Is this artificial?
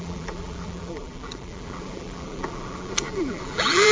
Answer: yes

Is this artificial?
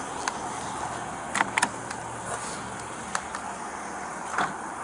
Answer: no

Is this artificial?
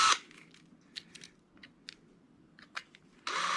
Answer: no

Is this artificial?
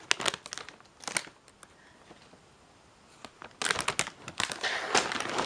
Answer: no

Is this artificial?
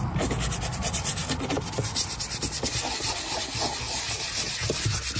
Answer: no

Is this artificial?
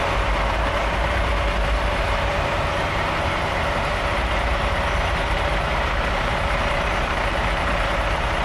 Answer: yes